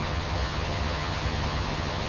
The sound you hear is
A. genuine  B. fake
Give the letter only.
B